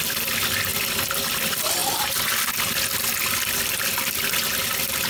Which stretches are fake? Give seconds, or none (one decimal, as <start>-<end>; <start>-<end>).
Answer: none